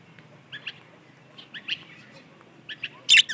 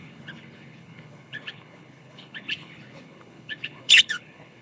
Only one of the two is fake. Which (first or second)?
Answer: second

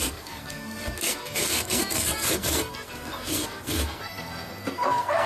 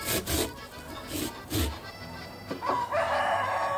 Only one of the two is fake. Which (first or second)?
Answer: first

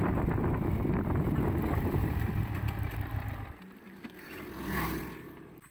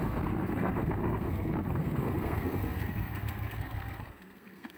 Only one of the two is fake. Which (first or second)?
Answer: second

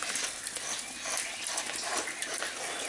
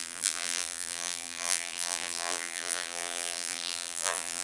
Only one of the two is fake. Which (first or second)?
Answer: second